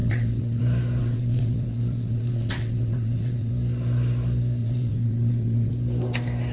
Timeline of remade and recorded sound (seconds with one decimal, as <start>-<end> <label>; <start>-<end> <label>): 0.0-0.6 remade; 0.6-1.0 recorded; 1.0-3.5 remade; 3.5-4.6 recorded; 4.6-5.7 remade; 5.7-6.5 recorded